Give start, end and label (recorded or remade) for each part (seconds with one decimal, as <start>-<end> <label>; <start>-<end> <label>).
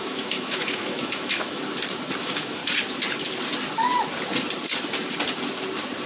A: 0.0-1.6 remade; 1.6-2.2 recorded; 2.2-2.6 remade; 2.6-6.1 recorded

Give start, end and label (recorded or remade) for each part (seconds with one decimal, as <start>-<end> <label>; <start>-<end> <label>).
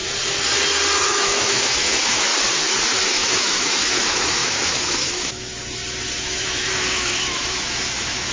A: 0.0-1.0 recorded; 1.0-2.3 remade; 2.3-3.1 recorded; 3.1-5.5 remade; 5.5-6.2 recorded; 6.2-8.3 remade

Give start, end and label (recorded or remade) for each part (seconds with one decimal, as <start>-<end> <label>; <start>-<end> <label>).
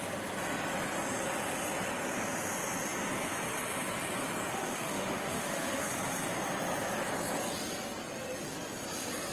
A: 0.0-4.5 recorded; 4.5-5.9 remade; 5.9-9.3 recorded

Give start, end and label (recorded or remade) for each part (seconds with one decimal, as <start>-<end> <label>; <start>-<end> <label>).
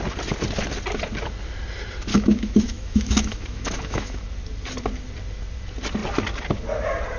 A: 0.0-2.1 recorded; 2.1-4.2 remade; 4.2-7.2 recorded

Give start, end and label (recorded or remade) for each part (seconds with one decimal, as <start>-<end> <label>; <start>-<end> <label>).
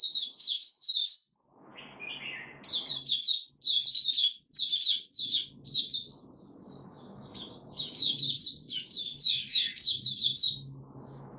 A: 0.0-1.7 remade; 1.7-6.9 recorded; 6.9-11.4 remade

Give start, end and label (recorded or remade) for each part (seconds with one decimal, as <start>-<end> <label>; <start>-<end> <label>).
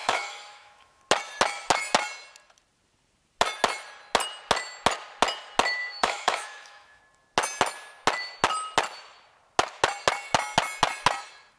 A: 0.0-1.0 remade; 1.0-5.8 recorded; 5.8-7.0 remade; 7.0-11.6 recorded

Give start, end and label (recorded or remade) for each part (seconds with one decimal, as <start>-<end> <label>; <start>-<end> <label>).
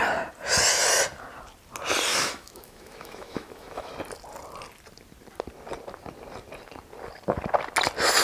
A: 0.0-2.1 recorded; 2.1-3.9 remade; 3.9-8.2 recorded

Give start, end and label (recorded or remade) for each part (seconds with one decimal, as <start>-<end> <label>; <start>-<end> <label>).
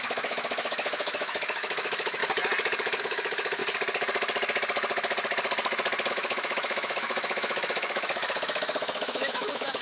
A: 0.0-2.2 remade; 2.2-3.0 recorded; 3.0-3.6 remade; 3.6-6.1 recorded; 6.1-9.8 remade